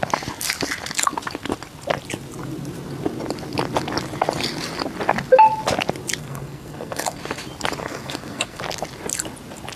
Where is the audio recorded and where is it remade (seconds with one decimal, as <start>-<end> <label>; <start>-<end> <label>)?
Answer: 0.0-6.2 recorded; 6.2-7.2 remade; 7.2-7.8 recorded; 7.8-8.6 remade; 8.6-9.8 recorded